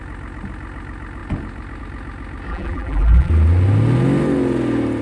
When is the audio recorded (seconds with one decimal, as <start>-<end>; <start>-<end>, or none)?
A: 0.0-2.5; 3.3-5.0